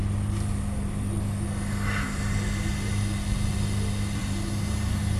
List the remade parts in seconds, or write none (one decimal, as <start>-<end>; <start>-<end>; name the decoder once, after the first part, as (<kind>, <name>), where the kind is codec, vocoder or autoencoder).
4.2-5.2 (vocoder, BigVGAN v2)